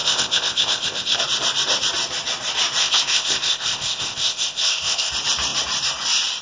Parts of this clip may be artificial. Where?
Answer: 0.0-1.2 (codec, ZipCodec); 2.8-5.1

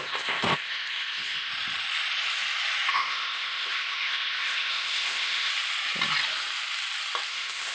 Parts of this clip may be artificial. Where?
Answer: 0.0-1.5 (codec, ZipCodec); 2.9-5.5; 7.3-7.7

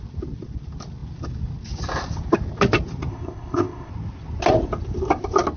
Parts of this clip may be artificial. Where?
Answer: 3.1-3.9 (codec, ZipCodec)

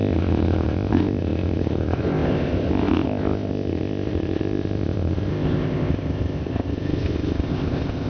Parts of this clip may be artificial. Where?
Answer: 0.0-8.1 (codec, ZipCodec)

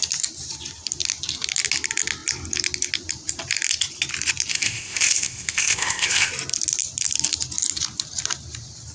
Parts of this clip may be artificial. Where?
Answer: 4.5-6.3 (codec, ZipCodec)

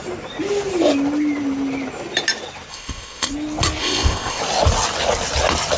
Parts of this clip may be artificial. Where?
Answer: 2.7-3.3 (codec, ZipCodec); 3.8-4.4

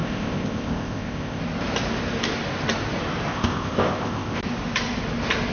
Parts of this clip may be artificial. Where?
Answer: 0.0-1.4 (codec, ZipCodec); 3.3-4.4

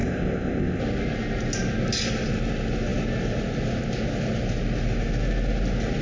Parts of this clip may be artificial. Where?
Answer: 0.0-0.8 (codec, ZipCodec)